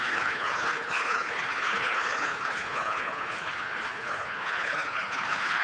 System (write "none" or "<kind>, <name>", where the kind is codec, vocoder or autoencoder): codec, HILCodec